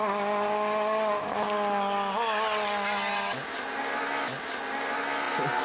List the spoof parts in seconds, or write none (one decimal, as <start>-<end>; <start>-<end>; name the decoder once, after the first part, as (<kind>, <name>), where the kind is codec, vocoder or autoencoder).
3.1-3.8 (vocoder, BigVGAN v2)